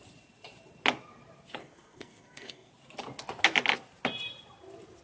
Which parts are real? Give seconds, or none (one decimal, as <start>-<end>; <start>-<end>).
0.0-1.6; 2.7-5.0